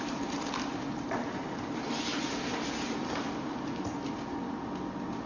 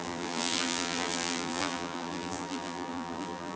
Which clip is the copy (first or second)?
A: second